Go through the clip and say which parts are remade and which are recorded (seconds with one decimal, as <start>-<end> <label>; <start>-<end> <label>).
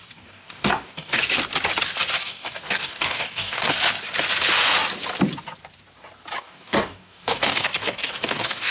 0.0-1.2 remade; 1.2-2.2 recorded; 2.2-3.7 remade; 3.7-6.4 recorded; 6.4-8.7 remade